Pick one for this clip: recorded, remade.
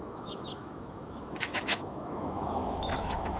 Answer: remade